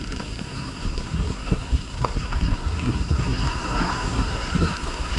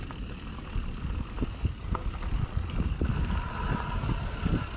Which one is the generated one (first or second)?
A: first